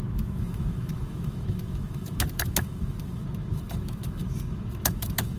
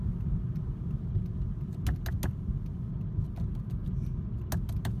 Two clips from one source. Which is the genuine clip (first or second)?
second